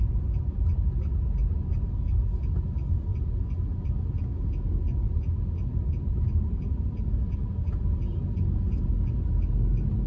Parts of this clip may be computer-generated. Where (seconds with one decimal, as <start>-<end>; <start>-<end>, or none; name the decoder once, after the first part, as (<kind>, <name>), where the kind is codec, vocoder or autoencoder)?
none